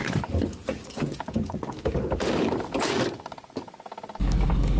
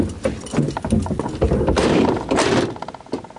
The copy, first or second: first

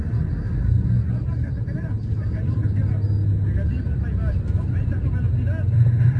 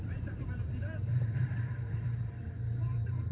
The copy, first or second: second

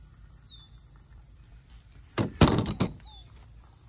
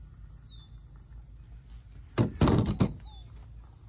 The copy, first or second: first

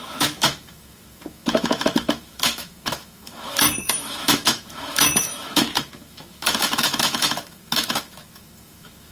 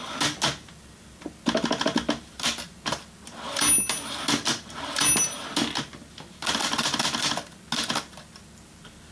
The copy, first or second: first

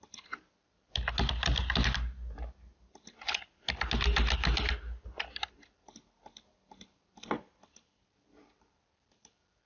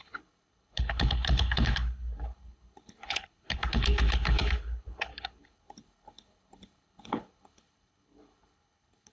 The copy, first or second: second